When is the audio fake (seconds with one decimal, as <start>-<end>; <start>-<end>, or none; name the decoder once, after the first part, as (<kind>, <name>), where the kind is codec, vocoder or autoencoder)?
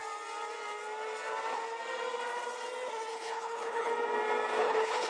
3.1-3.9 (codec, HILCodec); 4.6-5.1